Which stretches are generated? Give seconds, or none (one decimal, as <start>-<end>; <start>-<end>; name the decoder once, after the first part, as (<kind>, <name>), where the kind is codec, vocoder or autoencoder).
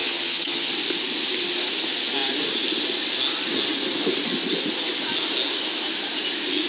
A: 0.0-0.7 (vocoder, HiFi-GAN)